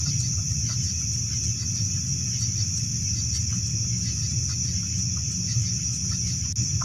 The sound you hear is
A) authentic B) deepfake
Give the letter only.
A